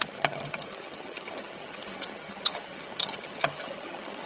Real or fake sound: fake